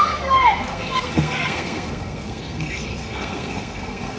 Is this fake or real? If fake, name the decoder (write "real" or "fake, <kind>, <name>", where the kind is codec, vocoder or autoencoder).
fake, codec, SNAC